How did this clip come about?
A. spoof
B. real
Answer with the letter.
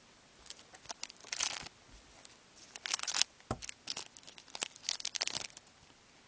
B